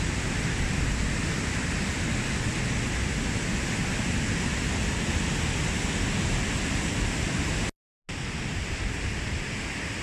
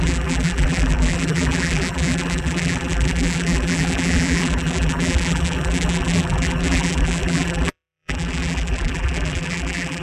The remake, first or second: second